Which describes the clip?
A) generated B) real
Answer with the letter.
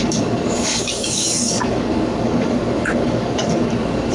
A